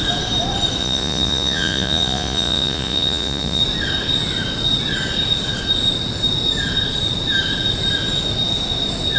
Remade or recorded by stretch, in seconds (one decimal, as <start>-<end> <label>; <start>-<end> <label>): 0.0-0.8 recorded; 0.8-3.6 remade; 3.6-9.2 recorded